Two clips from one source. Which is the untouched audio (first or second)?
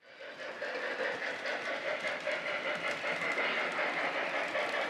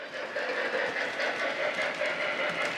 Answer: second